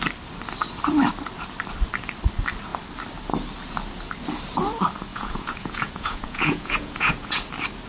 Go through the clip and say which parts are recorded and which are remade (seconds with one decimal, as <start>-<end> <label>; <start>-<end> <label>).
0.0-5.1 recorded; 5.1-7.4 remade; 7.4-7.9 recorded